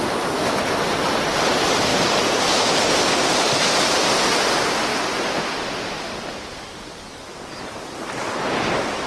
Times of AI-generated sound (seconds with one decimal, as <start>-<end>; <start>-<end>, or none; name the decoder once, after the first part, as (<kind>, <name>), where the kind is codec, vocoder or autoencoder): 1.9-4.4 (vocoder, BigVGAN v2); 4.9-6.1